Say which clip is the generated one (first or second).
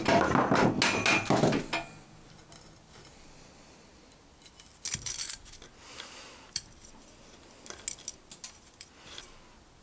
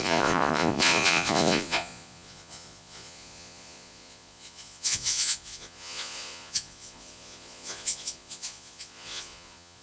second